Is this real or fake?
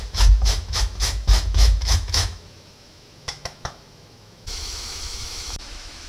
fake